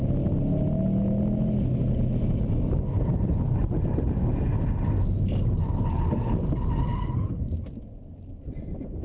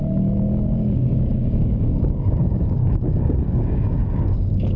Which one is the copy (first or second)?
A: second